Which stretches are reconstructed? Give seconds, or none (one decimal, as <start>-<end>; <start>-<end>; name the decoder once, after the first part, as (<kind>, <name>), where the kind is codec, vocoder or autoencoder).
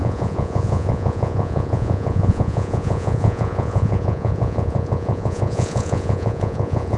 0.0-7.0 (vocoder, Vocos)